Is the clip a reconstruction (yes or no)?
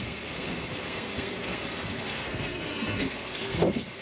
yes